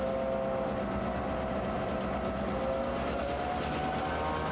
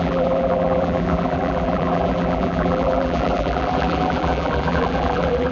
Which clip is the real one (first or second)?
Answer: first